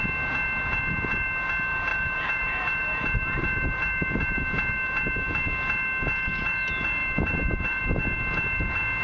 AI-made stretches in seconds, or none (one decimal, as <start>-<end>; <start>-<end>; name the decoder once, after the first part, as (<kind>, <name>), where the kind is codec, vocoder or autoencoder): 1.9-5.4 (vocoder, BigVGAN v2); 7.0-7.8